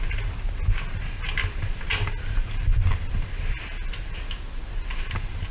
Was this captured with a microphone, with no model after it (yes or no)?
yes